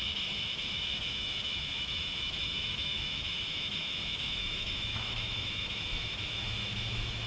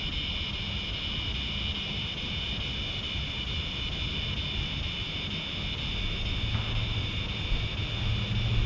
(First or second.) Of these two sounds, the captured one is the second